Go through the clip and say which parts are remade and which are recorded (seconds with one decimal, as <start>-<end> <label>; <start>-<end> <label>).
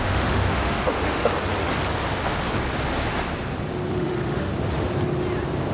0.0-1.3 remade; 1.3-3.9 recorded; 3.9-4.5 remade; 4.5-5.7 recorded